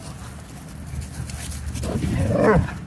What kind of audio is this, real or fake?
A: real